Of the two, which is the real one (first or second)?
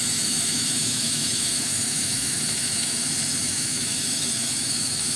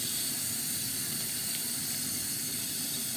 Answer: second